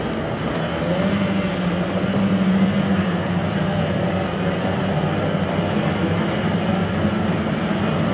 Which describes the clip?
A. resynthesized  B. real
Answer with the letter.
B